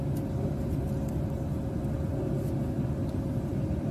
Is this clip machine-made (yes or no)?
no